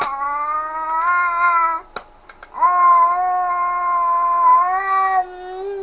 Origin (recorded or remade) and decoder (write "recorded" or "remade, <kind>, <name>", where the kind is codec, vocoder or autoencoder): recorded